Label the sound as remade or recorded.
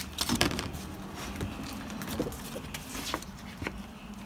recorded